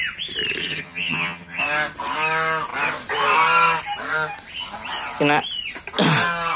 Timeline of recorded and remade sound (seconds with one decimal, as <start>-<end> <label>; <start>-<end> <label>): 0.0-0.6 recorded; 0.6-1.6 remade; 1.6-6.6 recorded